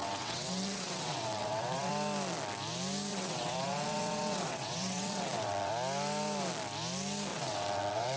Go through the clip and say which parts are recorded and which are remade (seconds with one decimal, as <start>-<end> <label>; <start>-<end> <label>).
0.0-1.9 remade; 1.9-3.1 recorded; 3.1-5.7 remade; 5.7-7.3 recorded; 7.3-8.2 remade